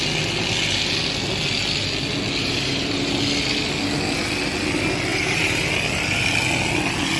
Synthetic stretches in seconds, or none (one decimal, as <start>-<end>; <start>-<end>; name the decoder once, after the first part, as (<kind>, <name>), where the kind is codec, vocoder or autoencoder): 2.4-3.1 (vocoder, BigVGAN v2); 5.1-5.7